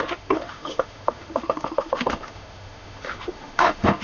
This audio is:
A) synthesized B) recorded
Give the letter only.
A